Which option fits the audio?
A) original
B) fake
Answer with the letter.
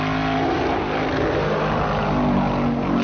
A